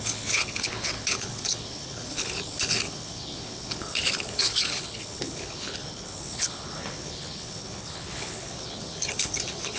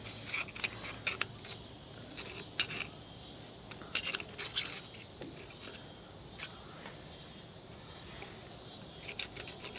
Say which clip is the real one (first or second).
second